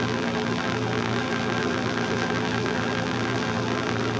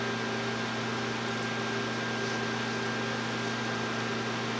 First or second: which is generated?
first